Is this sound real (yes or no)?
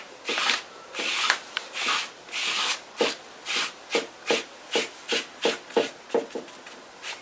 no